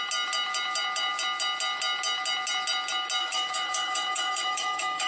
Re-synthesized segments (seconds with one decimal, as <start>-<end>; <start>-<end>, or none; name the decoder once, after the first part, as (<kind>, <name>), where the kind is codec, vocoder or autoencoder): 3.2-5.1 (autoencoder, DAC-VAE)